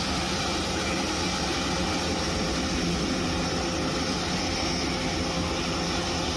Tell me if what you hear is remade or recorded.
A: recorded